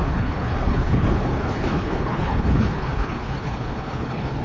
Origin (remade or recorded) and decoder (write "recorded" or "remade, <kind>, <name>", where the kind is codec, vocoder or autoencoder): remade, codec, HILCodec